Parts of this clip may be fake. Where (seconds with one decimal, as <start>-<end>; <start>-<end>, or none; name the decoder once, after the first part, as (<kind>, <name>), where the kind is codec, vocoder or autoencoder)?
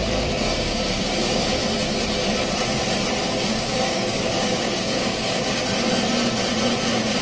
0.0-1.4 (codec, DAC); 3.2-5.6